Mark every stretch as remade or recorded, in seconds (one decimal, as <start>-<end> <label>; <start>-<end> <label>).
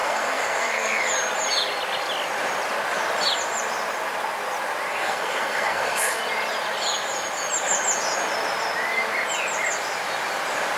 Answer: 0.0-1.0 remade; 1.0-4.9 recorded; 4.9-6.2 remade; 6.2-10.8 recorded